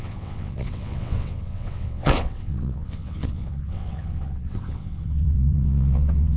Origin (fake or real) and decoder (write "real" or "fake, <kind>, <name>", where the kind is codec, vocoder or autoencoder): fake, vocoder, WaveNeXt